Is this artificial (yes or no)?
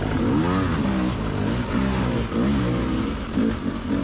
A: no